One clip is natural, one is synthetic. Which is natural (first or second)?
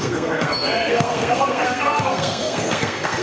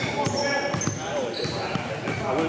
second